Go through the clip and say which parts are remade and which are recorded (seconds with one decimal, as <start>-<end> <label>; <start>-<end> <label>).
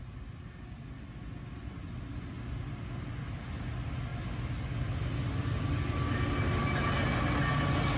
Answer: 0.0-8.0 recorded